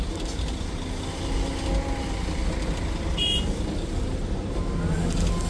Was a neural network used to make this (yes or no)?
no